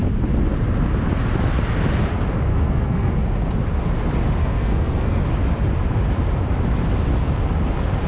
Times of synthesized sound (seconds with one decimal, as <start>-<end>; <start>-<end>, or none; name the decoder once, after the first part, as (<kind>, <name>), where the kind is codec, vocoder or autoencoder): 2.5-3.1 (codec, SNAC); 4.4-5.2